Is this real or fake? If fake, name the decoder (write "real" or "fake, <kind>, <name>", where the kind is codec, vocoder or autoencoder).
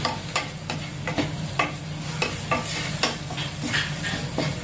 real